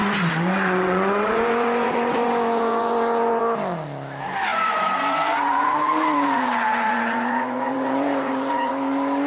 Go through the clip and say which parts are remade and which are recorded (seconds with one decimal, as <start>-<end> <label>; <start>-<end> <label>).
0.0-3.4 remade; 3.4-4.5 recorded; 4.5-8.7 remade; 8.7-9.3 recorded